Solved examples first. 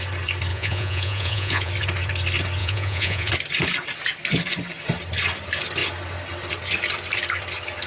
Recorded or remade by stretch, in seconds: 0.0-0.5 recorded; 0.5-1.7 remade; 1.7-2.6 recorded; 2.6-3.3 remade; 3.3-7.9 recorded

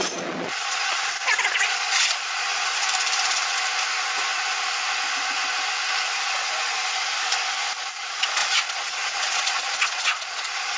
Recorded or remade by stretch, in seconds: 0.0-2.7 remade; 2.7-7.8 recorded; 7.8-10.8 remade

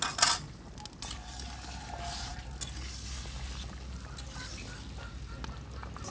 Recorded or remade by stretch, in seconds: 0.0-6.1 recorded

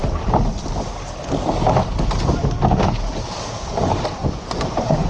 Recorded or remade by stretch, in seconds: 0.0-4.2 recorded; 4.2-5.1 remade